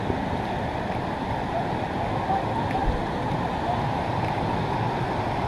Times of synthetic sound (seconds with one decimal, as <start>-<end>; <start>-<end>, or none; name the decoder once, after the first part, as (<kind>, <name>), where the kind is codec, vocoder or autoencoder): 2.8-4.4 (vocoder, BigVGAN v2)